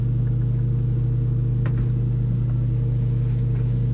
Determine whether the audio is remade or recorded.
recorded